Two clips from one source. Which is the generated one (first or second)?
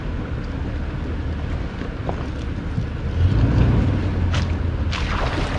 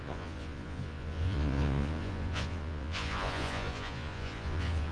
second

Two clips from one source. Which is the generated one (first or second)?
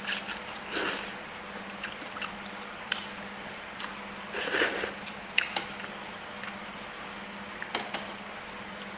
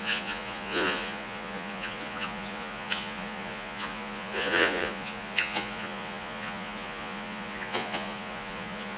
second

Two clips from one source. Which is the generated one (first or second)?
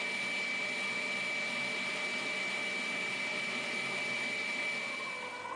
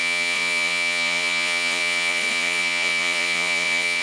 second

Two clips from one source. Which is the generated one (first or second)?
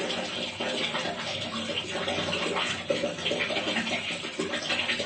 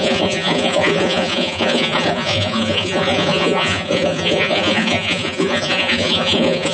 second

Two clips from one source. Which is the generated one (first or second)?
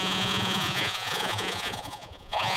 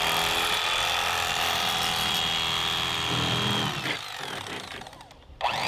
first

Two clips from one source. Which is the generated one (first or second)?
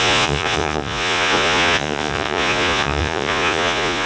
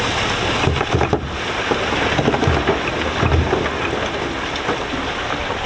first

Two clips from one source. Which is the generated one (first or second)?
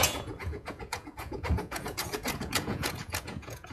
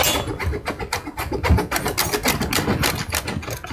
first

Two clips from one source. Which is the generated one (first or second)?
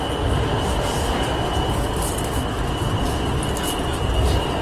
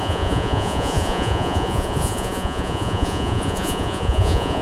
second